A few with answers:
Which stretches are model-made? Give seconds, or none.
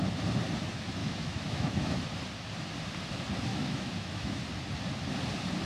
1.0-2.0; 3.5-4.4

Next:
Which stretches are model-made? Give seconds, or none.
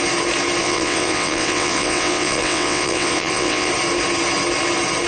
0.6-3.7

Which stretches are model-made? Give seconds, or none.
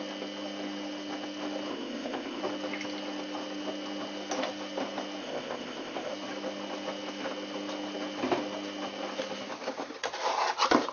1.7-2.4; 5.2-6.1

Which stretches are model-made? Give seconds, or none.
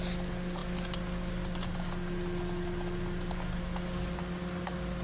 none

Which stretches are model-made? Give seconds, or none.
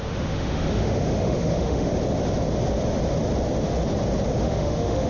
0.0-1.9; 4.4-5.1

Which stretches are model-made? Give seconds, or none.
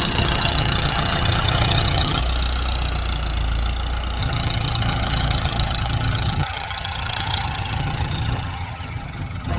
0.0-2.2; 4.2-9.6